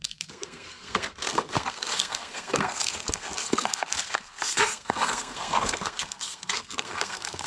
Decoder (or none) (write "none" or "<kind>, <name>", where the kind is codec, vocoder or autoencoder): codec, SNAC